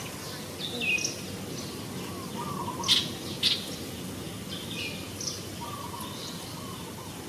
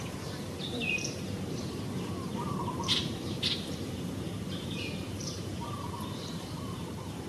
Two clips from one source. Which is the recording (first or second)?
first